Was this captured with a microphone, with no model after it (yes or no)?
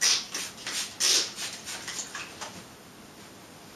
yes